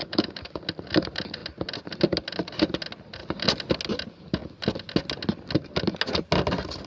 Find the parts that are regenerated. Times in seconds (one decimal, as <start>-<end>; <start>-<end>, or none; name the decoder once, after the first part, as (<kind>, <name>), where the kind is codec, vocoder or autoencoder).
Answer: 0.0-0.6 (autoencoder, DAC-VAE)